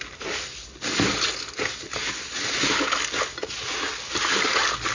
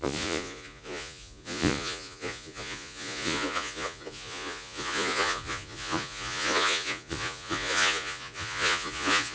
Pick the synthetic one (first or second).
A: second